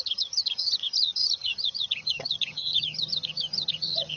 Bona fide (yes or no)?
no